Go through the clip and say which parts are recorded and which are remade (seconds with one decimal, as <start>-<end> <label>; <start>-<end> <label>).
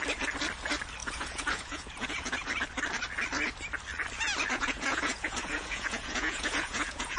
0.0-1.0 recorded; 1.0-2.5 remade; 2.5-4.5 recorded; 4.5-7.2 remade